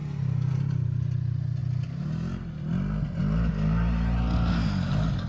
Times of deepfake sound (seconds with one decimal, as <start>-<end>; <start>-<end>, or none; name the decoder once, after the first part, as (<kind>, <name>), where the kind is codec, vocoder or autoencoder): none